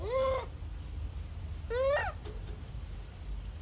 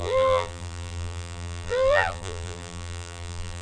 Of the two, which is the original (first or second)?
first